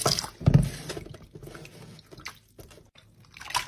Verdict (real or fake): real